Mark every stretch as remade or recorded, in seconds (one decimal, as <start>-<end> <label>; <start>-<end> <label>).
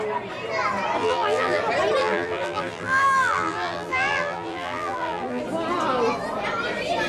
0.0-1.0 recorded; 1.0-1.6 remade; 1.6-2.0 recorded; 2.0-5.4 remade; 5.4-7.1 recorded